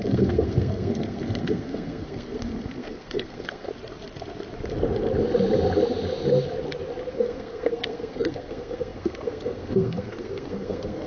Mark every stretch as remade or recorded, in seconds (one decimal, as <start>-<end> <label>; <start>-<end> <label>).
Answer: 0.0-3.7 remade; 3.7-7.1 recorded; 7.1-11.1 remade